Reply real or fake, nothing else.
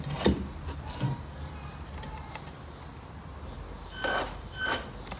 real